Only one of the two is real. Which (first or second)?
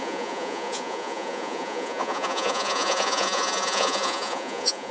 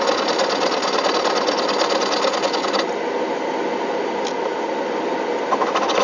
second